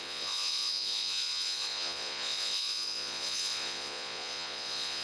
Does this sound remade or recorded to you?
remade